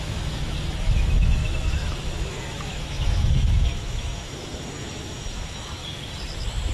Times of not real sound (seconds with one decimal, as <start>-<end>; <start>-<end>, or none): 0.0-5.8